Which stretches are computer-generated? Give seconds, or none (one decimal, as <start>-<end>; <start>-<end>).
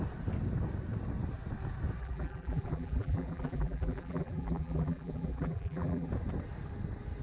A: 2.0-6.1